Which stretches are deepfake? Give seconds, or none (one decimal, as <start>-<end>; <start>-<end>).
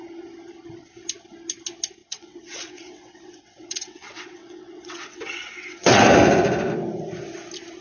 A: 2.0-6.0